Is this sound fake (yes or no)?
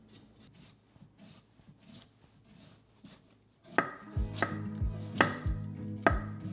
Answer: no